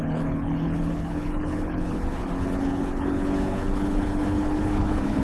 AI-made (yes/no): yes